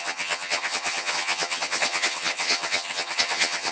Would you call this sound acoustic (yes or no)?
no